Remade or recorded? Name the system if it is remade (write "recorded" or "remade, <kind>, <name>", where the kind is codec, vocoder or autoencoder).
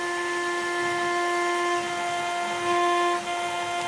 recorded